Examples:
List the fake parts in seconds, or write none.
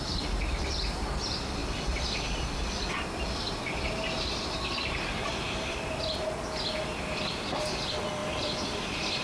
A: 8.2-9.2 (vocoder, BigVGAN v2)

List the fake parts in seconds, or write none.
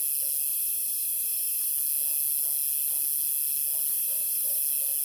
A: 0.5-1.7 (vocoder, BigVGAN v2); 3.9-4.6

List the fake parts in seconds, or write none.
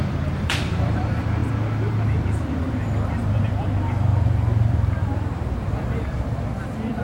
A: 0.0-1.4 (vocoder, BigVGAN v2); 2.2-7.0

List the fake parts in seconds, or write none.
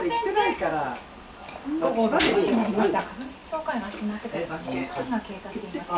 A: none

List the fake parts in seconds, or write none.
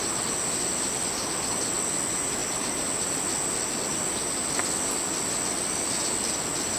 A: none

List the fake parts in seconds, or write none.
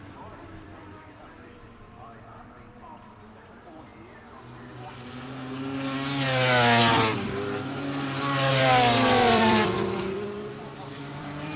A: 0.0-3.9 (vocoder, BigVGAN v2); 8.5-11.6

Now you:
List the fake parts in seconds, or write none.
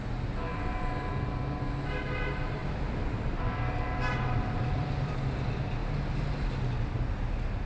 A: 0.5-1.3 (vocoder, BigVGAN v2); 2.6-5.1; 5.8-6.3